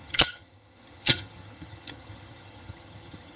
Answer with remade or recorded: remade